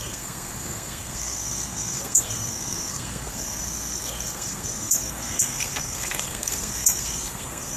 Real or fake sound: fake